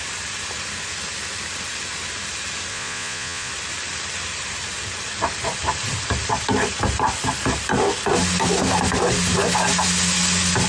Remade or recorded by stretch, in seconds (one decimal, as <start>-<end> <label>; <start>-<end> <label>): 0.0-2.7 recorded; 2.7-3.5 remade; 3.5-10.7 recorded